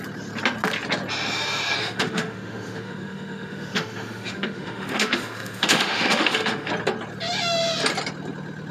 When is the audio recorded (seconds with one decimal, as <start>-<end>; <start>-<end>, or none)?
0.0-1.8; 6.7-8.7